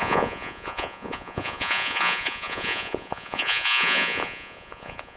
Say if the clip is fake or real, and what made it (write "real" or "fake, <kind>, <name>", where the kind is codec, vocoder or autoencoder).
fake, vocoder, Vocos